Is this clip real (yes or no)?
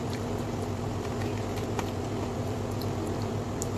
no